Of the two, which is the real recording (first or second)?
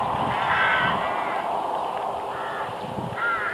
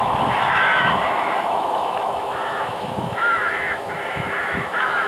first